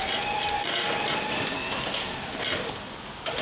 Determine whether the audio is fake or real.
fake